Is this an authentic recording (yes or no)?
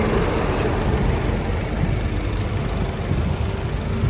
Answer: yes